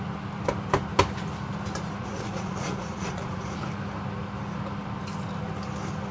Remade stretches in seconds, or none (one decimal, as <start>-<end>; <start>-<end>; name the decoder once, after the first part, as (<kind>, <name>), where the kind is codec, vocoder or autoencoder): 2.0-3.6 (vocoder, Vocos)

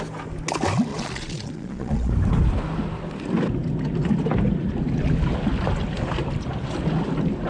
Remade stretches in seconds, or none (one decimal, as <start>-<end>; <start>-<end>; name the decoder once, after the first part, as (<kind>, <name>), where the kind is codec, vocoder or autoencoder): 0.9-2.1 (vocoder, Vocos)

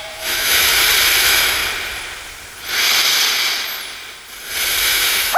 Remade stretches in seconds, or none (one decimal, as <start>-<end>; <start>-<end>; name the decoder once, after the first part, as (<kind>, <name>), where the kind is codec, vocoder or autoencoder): 0.0-0.7 (autoencoder, DAC-VAE); 1.2-1.6; 4.8-5.4

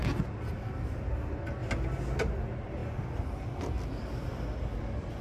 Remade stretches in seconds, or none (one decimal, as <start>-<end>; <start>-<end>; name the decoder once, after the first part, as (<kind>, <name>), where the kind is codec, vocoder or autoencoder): none